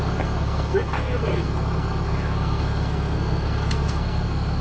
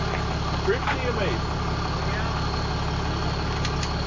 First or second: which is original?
second